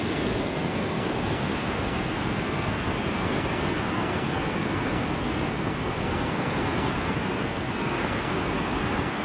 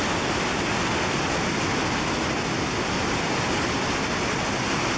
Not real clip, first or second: first